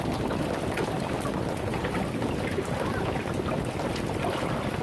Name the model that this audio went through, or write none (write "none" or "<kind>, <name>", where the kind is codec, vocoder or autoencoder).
none